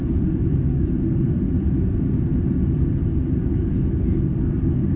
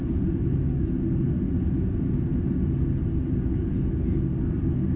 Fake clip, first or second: first